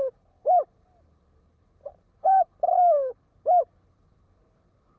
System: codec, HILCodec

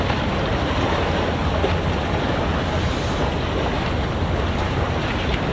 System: none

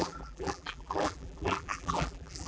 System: vocoder, BigVGAN v2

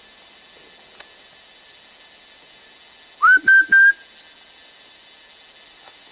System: none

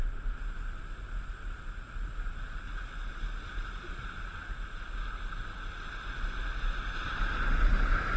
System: none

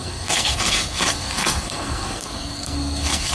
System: codec, SNAC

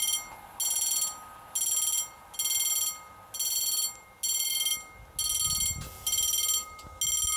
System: none